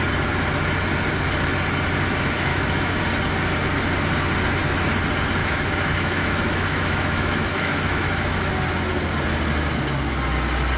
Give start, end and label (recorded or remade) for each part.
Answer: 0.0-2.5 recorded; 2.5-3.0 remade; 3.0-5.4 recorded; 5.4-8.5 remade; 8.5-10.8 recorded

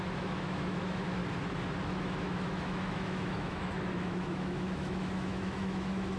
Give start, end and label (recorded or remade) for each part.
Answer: 0.0-1.2 remade; 1.2-1.9 recorded; 1.9-6.2 remade

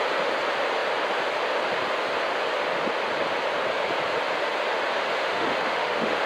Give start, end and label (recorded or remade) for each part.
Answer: 0.0-5.3 recorded; 5.3-6.3 remade

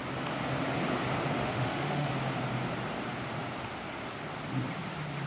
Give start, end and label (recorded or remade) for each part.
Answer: 0.0-1.4 recorded; 1.4-2.1 remade; 2.1-5.3 recorded

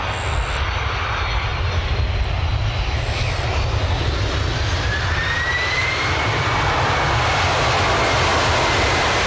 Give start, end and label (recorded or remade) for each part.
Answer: 0.0-9.3 recorded